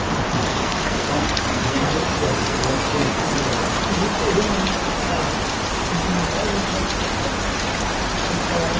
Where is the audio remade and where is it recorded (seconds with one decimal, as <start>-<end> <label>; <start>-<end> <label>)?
0.0-0.5 recorded; 0.5-3.3 remade; 3.3-8.8 recorded